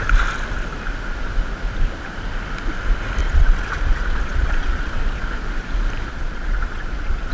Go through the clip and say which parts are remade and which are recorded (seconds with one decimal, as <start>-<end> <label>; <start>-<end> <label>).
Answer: 0.0-3.2 recorded; 3.2-4.9 remade; 4.9-6.1 recorded; 6.1-7.3 remade